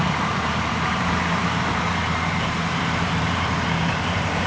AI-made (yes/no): yes